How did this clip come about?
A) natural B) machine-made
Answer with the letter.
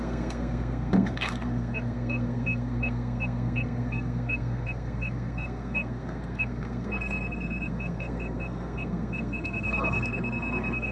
B